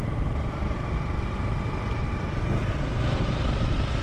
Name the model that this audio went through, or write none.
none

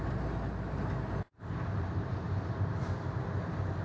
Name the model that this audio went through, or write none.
none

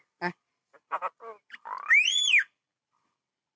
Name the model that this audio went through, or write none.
none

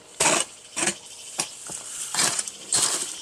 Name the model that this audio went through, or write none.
vocoder, BigVGAN v2